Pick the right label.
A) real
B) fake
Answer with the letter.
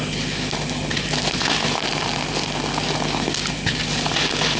A